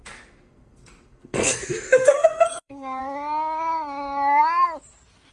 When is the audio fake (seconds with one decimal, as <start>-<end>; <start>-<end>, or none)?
0.0-3.0